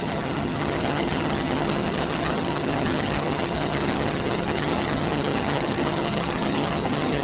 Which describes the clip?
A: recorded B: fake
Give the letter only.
B